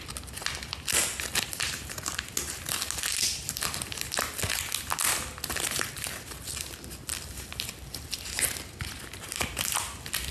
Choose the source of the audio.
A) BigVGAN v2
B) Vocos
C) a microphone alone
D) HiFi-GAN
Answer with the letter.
C